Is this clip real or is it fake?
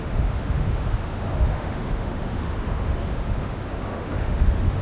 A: fake